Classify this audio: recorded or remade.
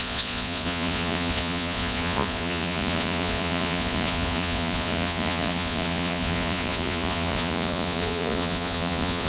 remade